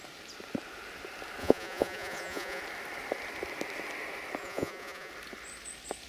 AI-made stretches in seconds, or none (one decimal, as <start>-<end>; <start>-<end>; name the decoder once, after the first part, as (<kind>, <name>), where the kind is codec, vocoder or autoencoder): 1.4-2.6 (vocoder, Vocos); 4.4-5.1